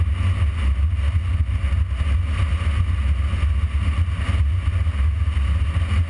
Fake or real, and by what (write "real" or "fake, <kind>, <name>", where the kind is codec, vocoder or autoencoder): real